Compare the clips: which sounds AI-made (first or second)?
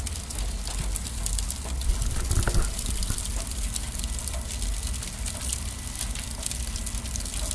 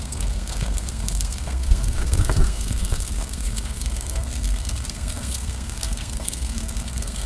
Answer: second